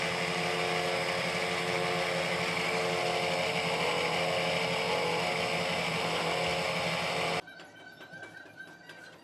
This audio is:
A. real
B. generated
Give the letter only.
A